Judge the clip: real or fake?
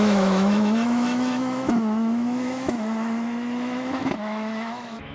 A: fake